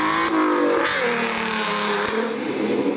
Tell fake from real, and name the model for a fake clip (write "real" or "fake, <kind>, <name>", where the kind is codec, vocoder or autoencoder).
real